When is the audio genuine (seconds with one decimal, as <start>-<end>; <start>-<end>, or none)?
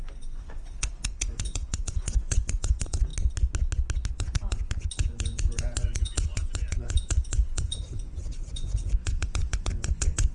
3.1-4.1